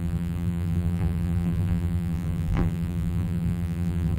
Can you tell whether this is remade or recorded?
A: remade